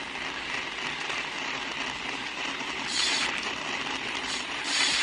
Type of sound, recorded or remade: recorded